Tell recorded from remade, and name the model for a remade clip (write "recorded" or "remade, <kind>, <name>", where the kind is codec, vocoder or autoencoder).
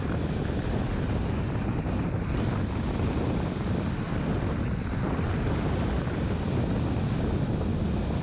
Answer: recorded